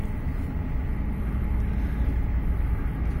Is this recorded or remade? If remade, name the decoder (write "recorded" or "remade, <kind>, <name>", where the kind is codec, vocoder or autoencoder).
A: recorded